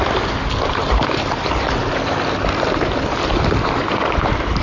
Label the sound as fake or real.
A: real